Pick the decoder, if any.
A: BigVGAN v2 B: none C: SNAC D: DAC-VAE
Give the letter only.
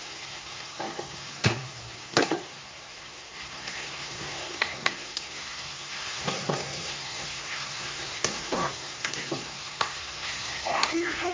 C